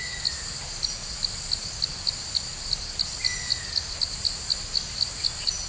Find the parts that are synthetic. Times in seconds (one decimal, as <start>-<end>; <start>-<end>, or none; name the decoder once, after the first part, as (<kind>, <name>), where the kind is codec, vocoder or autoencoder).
none